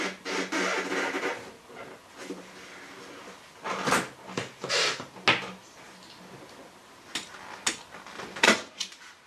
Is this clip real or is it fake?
real